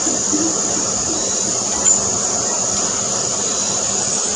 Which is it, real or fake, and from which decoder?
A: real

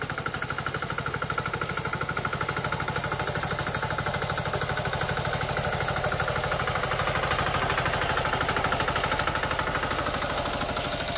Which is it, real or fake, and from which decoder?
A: real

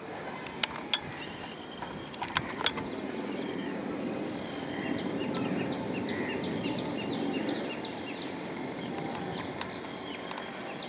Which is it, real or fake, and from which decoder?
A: real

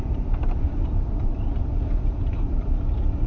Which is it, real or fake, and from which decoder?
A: fake, vocoder, BigVGAN v2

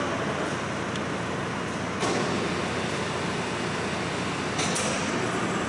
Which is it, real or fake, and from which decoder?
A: real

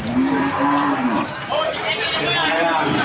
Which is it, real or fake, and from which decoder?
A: fake, vocoder, BigVGAN v2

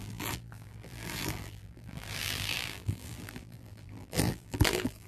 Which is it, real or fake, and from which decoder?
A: fake, vocoder, BigVGAN v2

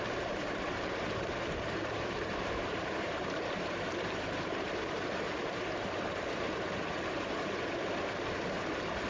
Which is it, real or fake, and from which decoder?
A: fake, vocoder, BigVGAN v2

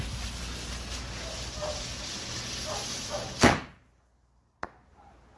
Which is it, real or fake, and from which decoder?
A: real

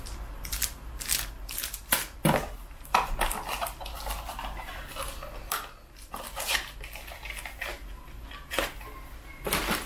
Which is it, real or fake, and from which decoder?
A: real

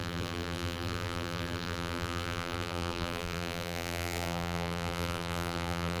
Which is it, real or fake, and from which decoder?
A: fake, vocoder, BigVGAN v2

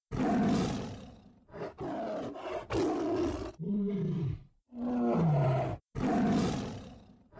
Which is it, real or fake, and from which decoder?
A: real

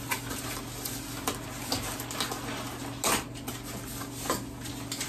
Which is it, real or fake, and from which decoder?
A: real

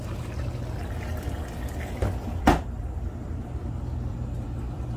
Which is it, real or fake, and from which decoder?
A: fake, vocoder, BigVGAN v2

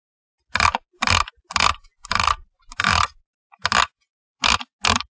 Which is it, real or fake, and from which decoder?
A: real